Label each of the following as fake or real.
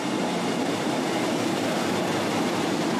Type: real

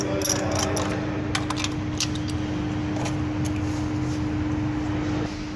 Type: real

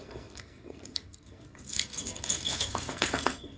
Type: fake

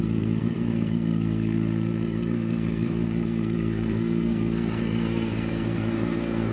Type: fake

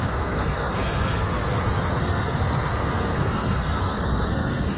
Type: fake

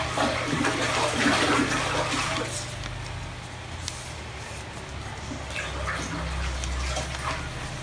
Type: real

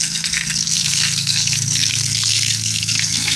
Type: fake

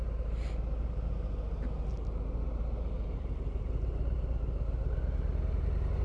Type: real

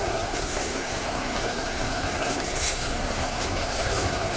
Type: fake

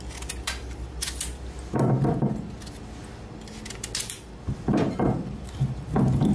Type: real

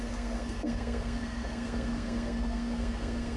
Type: fake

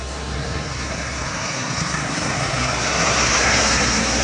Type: fake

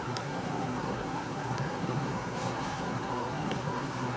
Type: fake